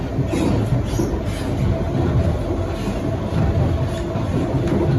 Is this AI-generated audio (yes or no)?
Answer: no